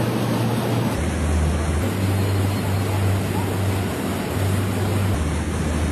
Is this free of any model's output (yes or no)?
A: yes